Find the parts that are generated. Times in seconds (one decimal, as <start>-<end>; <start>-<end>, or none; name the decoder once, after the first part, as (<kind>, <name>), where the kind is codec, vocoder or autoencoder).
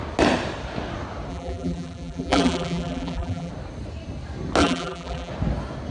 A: 1.3-3.5 (vocoder, BigVGAN v2); 4.6-5.3